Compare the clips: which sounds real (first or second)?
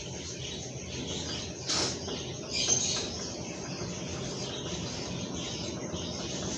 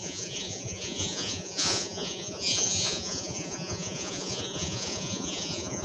first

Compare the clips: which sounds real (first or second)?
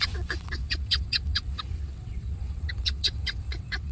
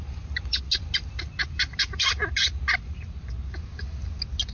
second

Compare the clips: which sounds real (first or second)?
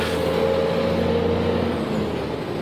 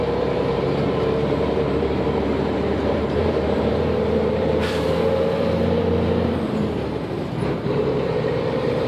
first